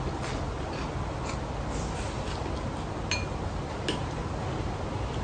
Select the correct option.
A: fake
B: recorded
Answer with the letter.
B